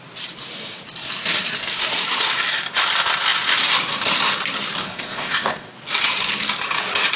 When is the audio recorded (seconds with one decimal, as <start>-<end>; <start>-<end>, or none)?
0.0-4.8; 5.7-7.2